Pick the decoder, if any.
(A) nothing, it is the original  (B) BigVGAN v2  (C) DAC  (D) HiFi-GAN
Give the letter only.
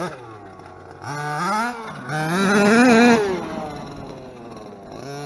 A